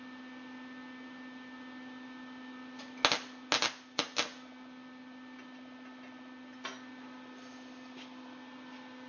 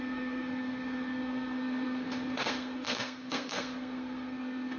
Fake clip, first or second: second